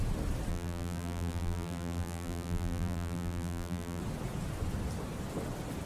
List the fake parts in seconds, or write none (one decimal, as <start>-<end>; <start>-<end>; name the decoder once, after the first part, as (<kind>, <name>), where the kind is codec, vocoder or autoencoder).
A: 0.5-4.0 (vocoder, BigVGAN v2)